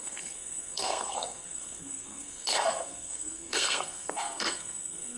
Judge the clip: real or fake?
fake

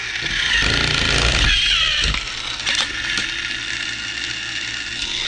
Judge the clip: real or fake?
real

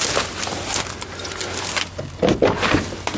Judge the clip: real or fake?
real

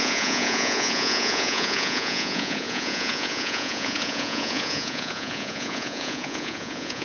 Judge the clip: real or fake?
fake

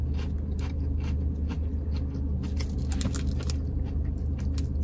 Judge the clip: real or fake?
real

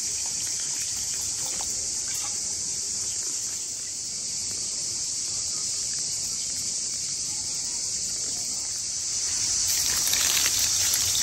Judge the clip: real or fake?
fake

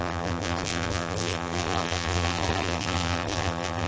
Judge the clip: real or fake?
fake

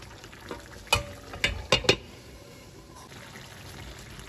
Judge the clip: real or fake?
real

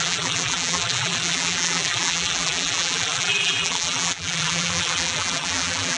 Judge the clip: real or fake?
fake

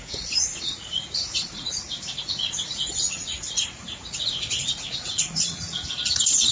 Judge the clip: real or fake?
fake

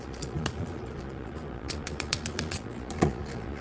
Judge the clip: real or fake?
fake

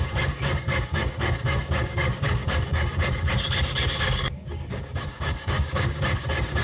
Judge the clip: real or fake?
fake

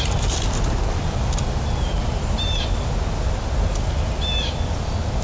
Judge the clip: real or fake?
real